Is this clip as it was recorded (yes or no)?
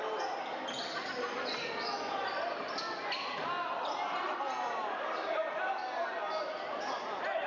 yes